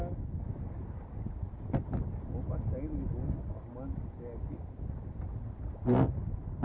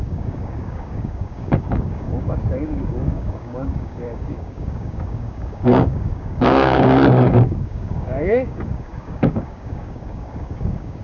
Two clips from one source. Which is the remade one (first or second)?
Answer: second